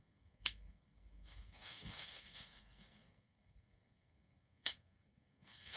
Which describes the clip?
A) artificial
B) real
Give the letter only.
A